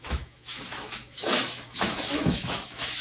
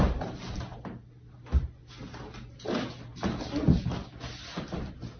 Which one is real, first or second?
second